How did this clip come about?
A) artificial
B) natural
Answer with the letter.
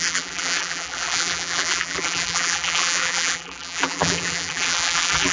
A